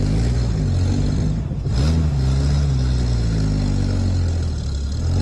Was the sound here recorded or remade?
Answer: recorded